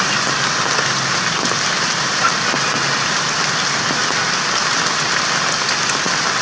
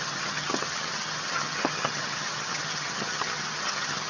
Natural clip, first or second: first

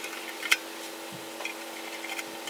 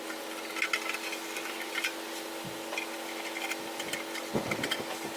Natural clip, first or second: second